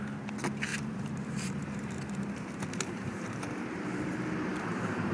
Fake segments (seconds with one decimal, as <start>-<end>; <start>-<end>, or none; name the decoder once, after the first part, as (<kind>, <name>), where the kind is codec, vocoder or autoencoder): 0.7-3.8 (vocoder, BigVGAN v2); 4.5-5.1